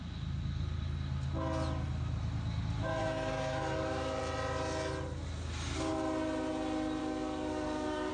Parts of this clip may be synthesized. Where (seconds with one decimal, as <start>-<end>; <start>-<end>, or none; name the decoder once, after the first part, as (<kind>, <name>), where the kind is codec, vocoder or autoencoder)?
3.0-4.2 (codec, DAC); 7.0-8.1